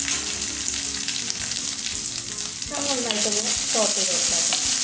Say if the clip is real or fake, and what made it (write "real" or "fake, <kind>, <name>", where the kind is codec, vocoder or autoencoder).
real